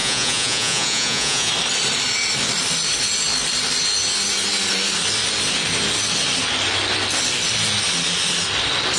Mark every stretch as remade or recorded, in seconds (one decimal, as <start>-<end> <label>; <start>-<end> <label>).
0.0-1.5 remade; 1.5-9.0 recorded